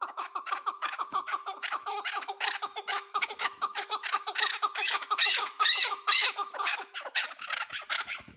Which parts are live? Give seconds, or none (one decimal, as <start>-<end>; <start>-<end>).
none